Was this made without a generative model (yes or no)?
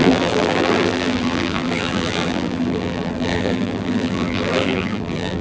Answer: no